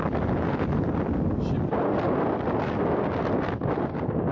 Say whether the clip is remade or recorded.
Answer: recorded